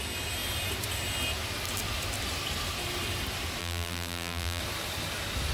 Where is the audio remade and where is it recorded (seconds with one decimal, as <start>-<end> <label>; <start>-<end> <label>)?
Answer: 0.0-3.6 recorded; 3.6-4.6 remade; 4.6-5.5 recorded